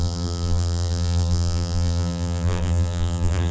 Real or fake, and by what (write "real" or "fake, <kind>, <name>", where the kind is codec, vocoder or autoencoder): fake, vocoder, BigVGAN v2